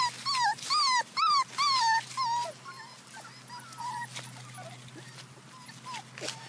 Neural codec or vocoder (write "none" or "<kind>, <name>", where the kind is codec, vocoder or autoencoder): none